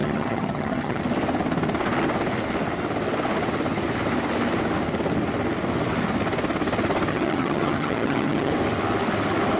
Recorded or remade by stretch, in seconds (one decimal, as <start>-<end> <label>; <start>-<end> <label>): 0.0-1.0 remade; 1.0-7.1 recorded; 7.1-8.5 remade; 8.5-9.6 recorded